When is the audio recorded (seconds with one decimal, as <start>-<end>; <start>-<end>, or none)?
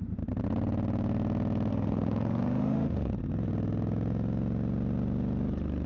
0.0-1.7; 3.1-5.9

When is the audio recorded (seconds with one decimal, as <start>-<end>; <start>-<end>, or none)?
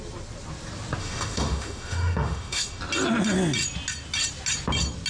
0.0-1.0; 2.8-5.1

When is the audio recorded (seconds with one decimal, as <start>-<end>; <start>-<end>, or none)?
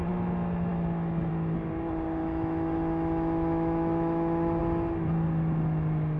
0.0-2.2; 4.6-6.2